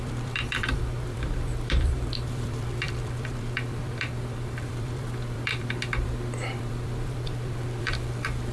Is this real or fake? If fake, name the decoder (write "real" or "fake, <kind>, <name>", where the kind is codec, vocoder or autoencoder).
fake, vocoder, BigVGAN v2